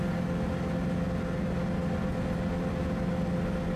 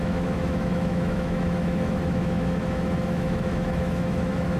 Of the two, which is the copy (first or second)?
second